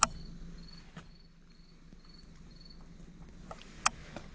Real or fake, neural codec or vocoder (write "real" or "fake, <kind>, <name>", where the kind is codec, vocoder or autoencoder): real